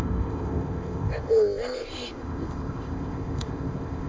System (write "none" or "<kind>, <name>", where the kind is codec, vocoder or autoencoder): codec, ZipCodec